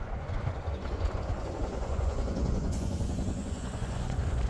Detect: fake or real fake